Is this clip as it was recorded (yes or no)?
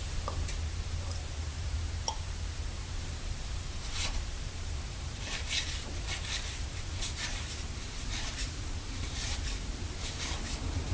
no